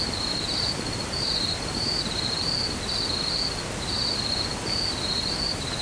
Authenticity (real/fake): real